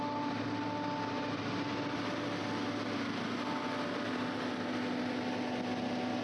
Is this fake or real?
real